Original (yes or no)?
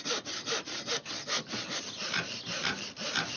yes